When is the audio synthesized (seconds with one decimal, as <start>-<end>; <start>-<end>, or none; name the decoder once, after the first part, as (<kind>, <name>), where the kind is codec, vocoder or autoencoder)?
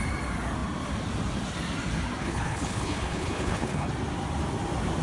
2.2-3.9 (codec, HILCodec)